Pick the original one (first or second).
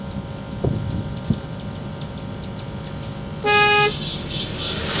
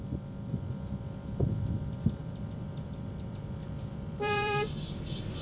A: first